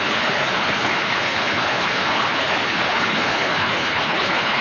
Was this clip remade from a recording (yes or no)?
yes